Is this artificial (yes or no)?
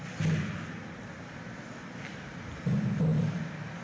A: no